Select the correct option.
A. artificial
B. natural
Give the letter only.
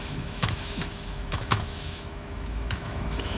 A